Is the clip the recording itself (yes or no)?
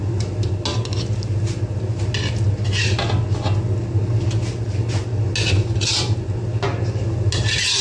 yes